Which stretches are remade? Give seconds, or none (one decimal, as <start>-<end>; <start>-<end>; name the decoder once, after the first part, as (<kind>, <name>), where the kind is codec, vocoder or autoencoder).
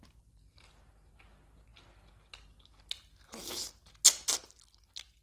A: none